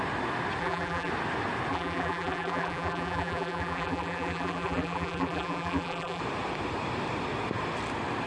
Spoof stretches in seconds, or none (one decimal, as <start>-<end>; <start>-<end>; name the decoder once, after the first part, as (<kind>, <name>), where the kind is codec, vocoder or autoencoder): 0.6-1.1 (vocoder, BigVGAN v2); 1.7-6.2